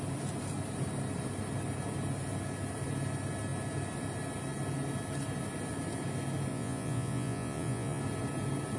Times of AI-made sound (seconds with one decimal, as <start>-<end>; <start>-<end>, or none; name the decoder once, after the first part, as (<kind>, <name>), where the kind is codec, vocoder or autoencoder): 6.5-8.0 (vocoder, Vocos)